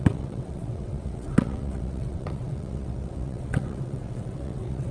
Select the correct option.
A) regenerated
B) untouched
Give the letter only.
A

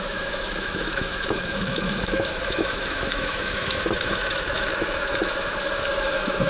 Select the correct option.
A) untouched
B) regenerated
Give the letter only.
B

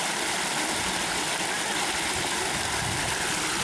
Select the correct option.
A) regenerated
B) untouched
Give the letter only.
B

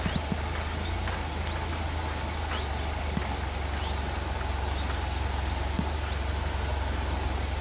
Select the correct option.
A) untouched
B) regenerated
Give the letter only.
A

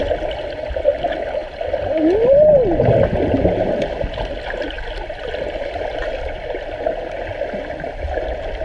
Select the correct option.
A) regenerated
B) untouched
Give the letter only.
B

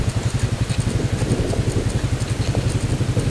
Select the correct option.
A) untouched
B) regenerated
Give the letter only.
A